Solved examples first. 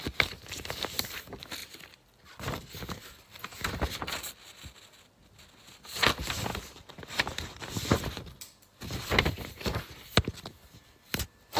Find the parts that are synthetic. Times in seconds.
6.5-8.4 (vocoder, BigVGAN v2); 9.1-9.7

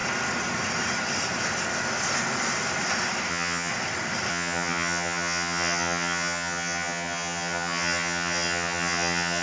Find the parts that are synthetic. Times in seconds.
3.3-3.7 (vocoder, HiFi-GAN); 4.3-9.4

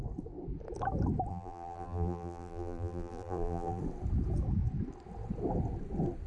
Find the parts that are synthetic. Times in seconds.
1.3-3.8 (vocoder, BigVGAN v2)

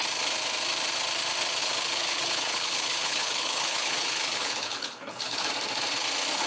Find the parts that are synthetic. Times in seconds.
1.6-5.5 (codec, HILCodec)

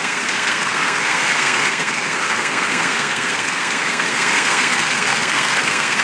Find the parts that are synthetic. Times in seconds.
0.0-6.0 (codec, SNAC)

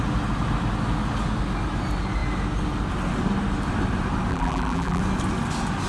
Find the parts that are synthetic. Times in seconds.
4.3-5.0 (vocoder, BigVGAN v2)

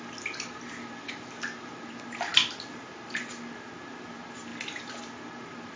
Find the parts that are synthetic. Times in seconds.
none

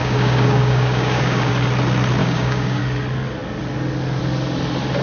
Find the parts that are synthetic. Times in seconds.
0.0-1.5 (codec, DAC); 2.2-2.8